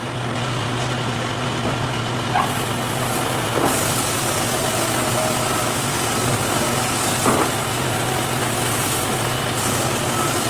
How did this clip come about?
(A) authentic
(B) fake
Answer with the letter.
A